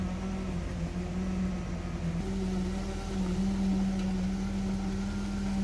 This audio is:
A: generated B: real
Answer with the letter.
B